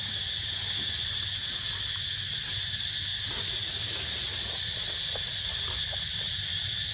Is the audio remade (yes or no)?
no